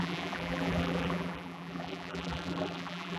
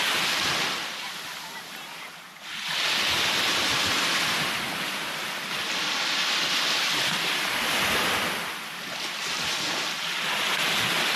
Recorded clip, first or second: second